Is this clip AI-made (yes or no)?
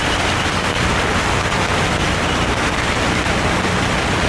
no